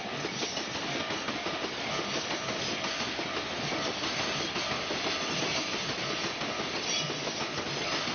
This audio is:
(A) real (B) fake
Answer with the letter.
A